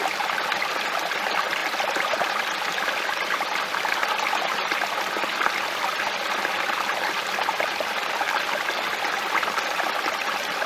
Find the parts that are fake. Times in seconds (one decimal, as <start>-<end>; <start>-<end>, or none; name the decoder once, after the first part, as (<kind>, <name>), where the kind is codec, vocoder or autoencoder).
none